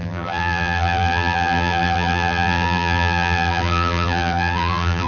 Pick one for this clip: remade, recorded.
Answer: remade